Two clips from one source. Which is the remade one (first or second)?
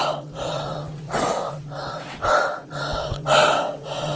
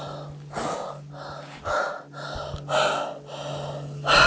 first